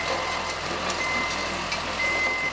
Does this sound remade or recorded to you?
recorded